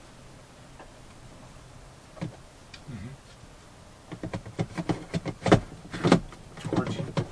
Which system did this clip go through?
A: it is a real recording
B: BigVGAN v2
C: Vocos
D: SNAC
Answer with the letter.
A